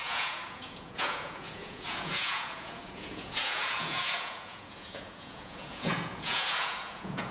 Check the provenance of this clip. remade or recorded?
remade